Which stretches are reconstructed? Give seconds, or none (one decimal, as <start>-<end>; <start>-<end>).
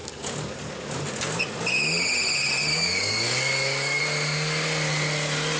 0.0-1.0; 2.7-4.0